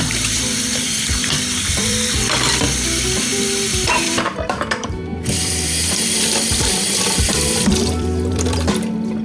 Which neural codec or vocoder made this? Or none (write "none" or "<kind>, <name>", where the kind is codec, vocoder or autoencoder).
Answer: vocoder, BigVGAN v2